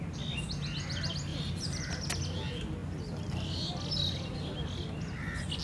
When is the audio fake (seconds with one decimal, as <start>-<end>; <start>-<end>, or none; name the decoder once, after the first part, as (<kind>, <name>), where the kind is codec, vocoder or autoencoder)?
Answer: 1.3-1.8 (vocoder, BigVGAN v2)